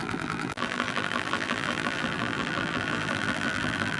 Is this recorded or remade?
remade